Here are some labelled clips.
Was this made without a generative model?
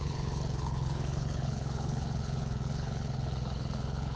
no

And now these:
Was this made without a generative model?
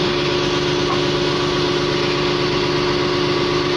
yes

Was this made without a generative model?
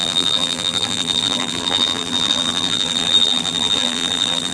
no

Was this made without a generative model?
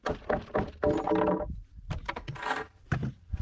yes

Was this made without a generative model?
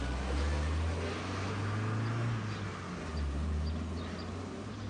yes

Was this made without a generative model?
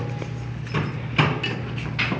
yes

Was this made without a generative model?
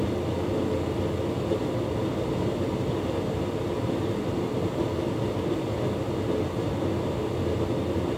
yes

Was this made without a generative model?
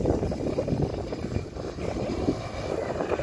yes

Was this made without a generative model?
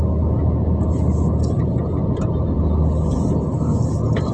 yes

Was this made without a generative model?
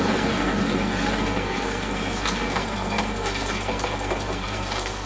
no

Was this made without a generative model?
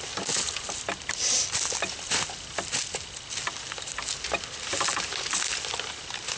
yes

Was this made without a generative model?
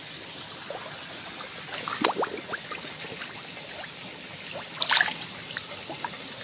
yes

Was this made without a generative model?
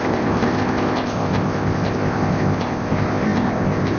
no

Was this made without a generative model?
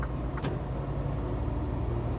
yes